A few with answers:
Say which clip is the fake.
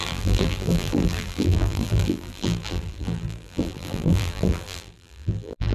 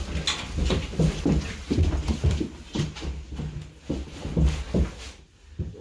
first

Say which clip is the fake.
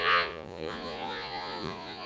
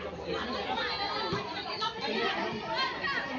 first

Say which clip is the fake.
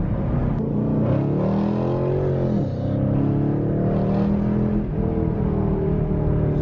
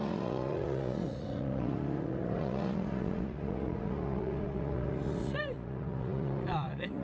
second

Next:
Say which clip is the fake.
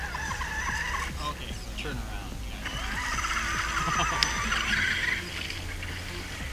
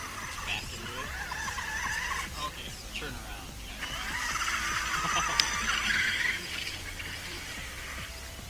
second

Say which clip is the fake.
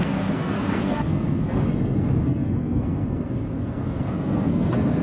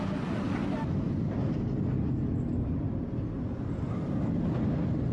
first